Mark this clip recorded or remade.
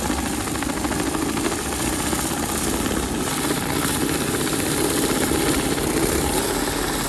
recorded